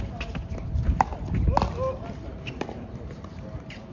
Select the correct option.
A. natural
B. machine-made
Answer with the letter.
A